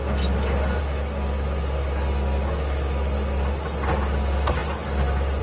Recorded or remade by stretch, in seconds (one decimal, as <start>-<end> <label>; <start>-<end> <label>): 0.0-5.4 recorded